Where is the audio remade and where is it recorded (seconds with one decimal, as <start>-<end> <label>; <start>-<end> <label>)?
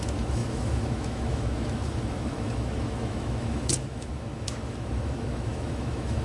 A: 0.0-6.2 remade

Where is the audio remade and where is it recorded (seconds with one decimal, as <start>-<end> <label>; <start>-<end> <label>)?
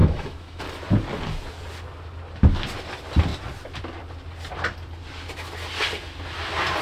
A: 0.0-0.6 remade; 0.6-6.8 recorded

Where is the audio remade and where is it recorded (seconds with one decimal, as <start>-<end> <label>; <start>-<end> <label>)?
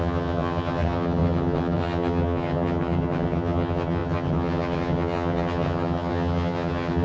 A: 0.0-7.0 remade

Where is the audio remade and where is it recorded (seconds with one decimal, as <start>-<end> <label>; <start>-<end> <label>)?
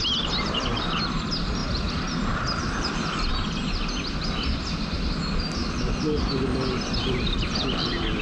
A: 0.0-8.2 recorded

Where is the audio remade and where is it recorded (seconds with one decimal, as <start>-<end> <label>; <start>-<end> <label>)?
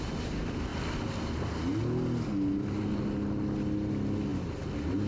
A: 0.0-5.1 recorded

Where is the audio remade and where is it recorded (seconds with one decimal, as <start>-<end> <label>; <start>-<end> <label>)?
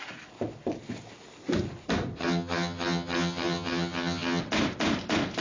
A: 0.0-2.2 recorded; 2.2-4.4 remade; 4.4-5.4 recorded